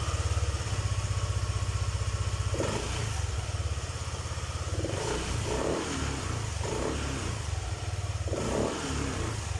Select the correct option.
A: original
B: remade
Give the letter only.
A